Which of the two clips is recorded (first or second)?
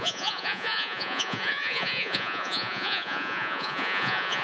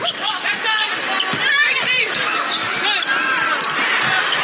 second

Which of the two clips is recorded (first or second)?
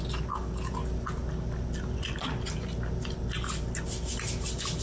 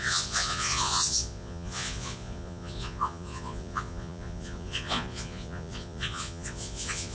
first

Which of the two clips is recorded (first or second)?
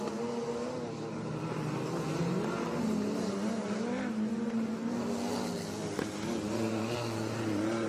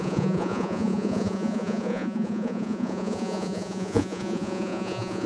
first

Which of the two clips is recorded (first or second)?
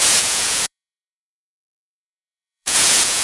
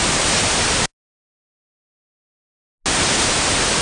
second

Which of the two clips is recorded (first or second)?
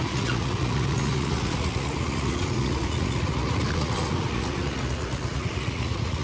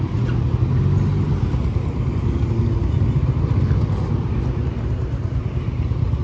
second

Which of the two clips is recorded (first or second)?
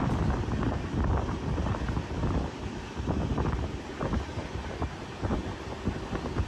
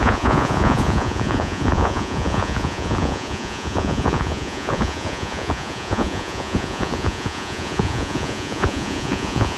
first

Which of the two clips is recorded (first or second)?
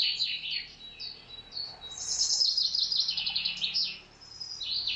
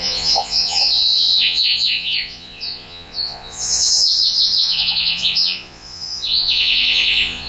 first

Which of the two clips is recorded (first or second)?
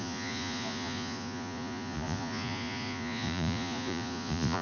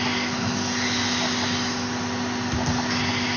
second